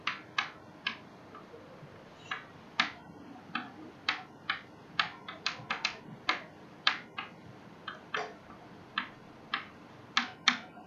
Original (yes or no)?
yes